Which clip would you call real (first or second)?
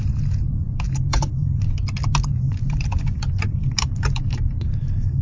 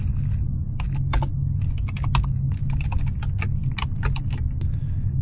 second